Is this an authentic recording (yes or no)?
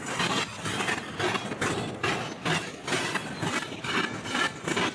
yes